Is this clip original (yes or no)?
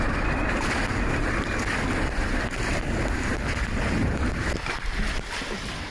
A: yes